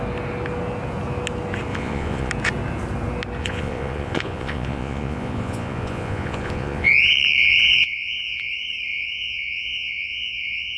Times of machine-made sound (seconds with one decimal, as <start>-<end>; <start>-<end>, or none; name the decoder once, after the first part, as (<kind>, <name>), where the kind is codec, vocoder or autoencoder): 1.7-2.3 (vocoder, Vocos); 3.4-8.5; 8.9-10.8